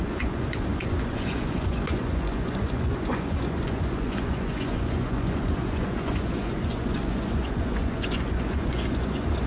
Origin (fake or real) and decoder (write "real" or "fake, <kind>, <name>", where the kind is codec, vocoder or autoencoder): fake, vocoder, Vocos